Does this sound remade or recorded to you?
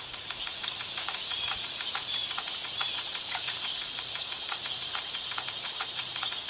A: remade